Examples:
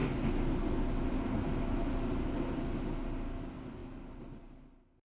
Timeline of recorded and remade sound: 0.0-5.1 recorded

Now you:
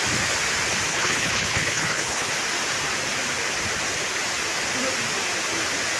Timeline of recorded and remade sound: 0.0-0.9 recorded; 0.9-2.3 remade; 2.3-6.0 recorded

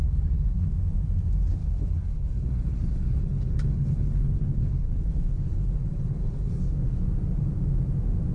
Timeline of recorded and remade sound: 0.0-0.7 remade; 0.7-1.6 recorded; 1.6-6.6 remade; 6.6-8.3 recorded

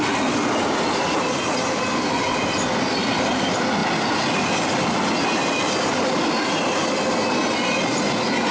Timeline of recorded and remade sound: 0.0-8.5 recorded

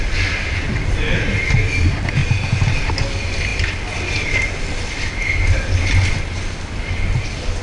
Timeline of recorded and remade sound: 0.0-7.6 recorded

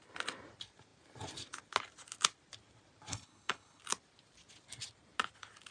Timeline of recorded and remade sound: 0.0-3.1 recorded; 3.1-3.8 remade; 3.8-5.7 recorded